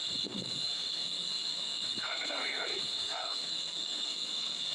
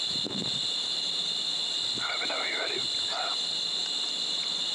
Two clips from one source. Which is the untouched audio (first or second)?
second